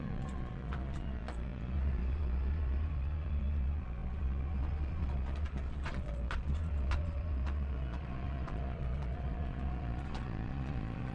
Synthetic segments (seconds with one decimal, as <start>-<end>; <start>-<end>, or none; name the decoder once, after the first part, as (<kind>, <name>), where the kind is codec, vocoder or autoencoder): 0.0-11.1 (vocoder, Vocos)